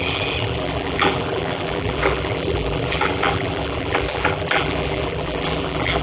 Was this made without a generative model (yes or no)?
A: no